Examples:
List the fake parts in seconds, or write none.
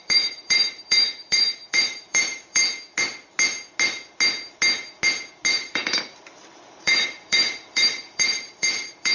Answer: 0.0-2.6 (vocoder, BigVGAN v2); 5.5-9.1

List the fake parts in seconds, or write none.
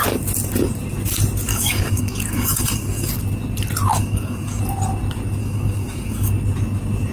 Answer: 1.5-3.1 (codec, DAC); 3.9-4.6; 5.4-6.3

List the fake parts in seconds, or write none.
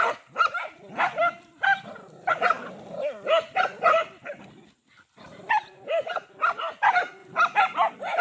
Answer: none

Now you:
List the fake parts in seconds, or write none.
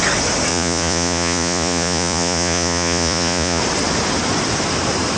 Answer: 0.5-3.6 (vocoder, Vocos)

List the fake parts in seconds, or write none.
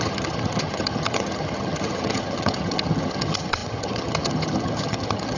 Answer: 0.0-5.4 (vocoder, HiFi-GAN)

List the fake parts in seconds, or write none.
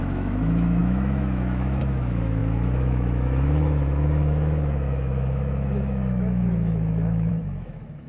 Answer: 0.0-8.1 (autoencoder, DAC-VAE)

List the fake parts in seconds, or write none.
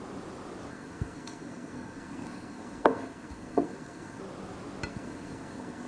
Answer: 0.7-4.2 (codec, SNAC); 4.9-5.9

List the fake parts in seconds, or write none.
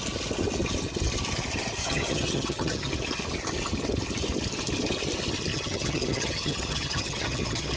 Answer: 1.8-2.9 (vocoder, HiFi-GAN); 5.5-7.8